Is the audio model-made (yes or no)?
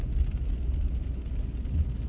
no